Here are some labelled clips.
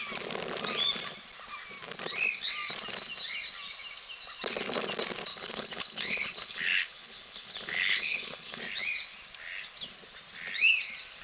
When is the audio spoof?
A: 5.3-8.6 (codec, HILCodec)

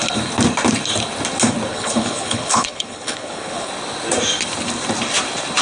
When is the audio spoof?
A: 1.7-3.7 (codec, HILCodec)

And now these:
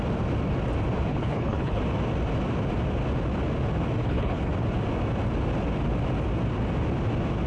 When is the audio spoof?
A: 1.1-1.8 (codec, HILCodec); 4.0-4.5

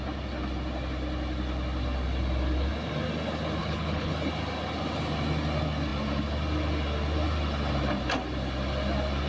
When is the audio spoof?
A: 3.6-4.1 (codec, HILCodec)

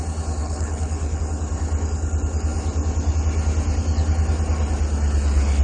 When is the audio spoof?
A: 0.4-1.2 (codec, HILCodec)